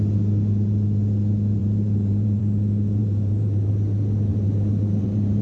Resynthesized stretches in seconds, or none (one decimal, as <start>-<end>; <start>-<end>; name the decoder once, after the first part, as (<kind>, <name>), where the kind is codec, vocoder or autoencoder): 1.6-2.4 (vocoder, BigVGAN v2); 3.0-3.7; 4.3-5.4